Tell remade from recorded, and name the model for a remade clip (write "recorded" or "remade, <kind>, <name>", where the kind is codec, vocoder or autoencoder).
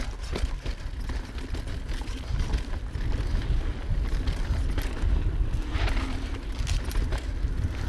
recorded